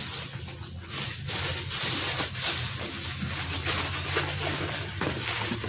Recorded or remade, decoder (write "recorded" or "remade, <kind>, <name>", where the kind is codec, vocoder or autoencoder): recorded